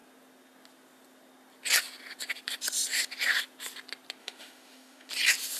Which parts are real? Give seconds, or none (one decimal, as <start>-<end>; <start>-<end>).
0.0-4.2; 5.1-5.6